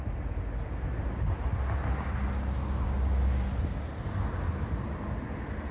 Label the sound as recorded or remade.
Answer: recorded